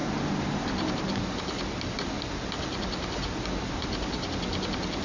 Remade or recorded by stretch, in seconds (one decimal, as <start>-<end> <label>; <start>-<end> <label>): 0.0-5.0 recorded